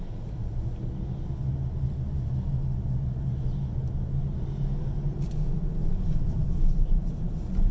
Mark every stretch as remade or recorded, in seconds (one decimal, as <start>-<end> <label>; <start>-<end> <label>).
0.0-7.7 recorded

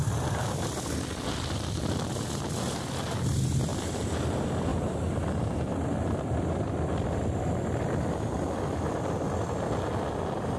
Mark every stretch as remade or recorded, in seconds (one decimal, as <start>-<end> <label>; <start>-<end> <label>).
0.0-3.7 recorded; 3.7-4.3 remade; 4.3-4.7 recorded; 4.7-9.1 remade; 9.1-10.6 recorded

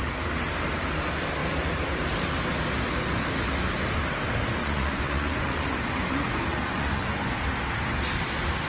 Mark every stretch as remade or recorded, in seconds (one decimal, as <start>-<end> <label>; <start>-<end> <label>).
0.0-4.6 recorded; 4.6-7.4 remade; 7.4-8.7 recorded